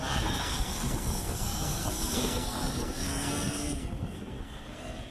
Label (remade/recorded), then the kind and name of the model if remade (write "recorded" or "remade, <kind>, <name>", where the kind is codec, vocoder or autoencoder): remade, codec, SNAC